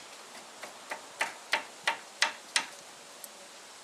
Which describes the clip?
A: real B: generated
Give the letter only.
A